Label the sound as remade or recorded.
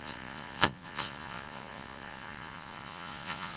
remade